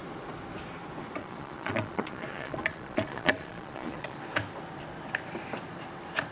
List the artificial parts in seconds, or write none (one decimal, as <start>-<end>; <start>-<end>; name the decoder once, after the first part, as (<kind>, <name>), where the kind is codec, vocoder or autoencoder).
1.2-4.2 (vocoder, Vocos)

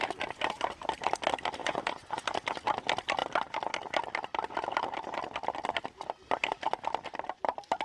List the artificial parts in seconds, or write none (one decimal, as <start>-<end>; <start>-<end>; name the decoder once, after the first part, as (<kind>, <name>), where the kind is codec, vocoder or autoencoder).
1.6-2.2 (vocoder, Vocos)

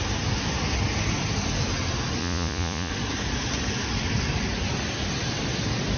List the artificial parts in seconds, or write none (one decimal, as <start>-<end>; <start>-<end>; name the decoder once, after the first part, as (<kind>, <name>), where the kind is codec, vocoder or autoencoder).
2.2-2.9 (vocoder, Vocos)

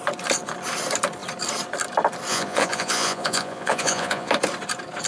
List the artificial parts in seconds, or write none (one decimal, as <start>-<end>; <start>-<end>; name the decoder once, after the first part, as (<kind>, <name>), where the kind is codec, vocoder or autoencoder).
2.3-4.3 (vocoder, Vocos)

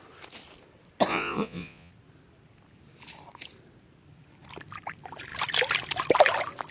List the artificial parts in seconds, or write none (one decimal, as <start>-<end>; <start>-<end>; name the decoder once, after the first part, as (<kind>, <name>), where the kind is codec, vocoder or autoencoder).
1.1-1.9 (vocoder, Vocos)

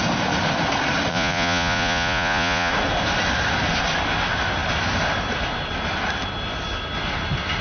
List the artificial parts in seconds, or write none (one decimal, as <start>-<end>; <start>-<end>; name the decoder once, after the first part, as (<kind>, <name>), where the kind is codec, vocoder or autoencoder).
1.1-2.7 (vocoder, Vocos)

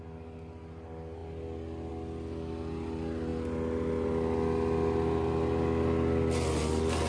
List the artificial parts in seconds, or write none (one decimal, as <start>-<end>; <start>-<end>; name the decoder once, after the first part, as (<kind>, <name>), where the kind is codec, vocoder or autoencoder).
none

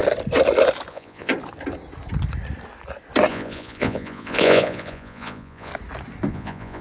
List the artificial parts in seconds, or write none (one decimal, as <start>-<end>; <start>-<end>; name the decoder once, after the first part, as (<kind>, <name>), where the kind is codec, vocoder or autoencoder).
0.9-1.3 (vocoder, Vocos); 3.3-5.7; 6.3-6.8